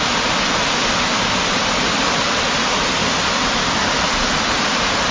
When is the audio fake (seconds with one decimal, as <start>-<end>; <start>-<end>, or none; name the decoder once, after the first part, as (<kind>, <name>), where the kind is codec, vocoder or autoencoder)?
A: 3.8-5.1 (vocoder, BigVGAN v2)